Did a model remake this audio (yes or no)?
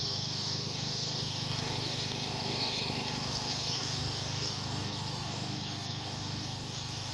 yes